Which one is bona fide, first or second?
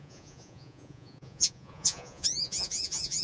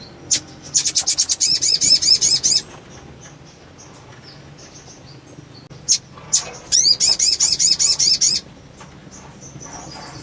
second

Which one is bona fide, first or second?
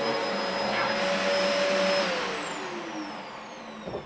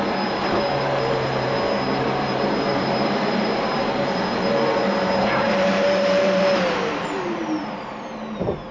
first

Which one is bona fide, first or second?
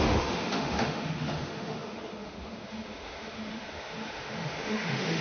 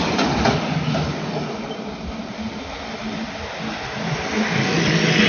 second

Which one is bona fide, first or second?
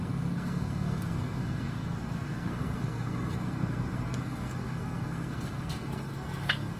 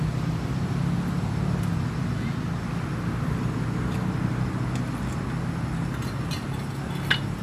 second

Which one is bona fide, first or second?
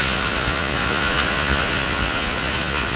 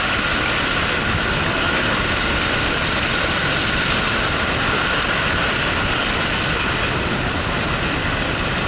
second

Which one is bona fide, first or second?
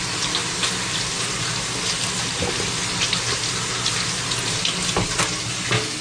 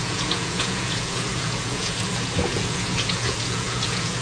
first